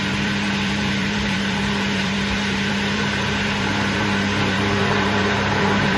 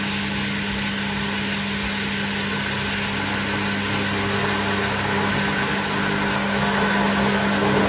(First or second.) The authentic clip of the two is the second